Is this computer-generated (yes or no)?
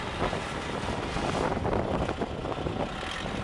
no